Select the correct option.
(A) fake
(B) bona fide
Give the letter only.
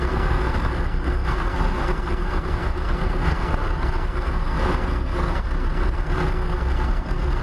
A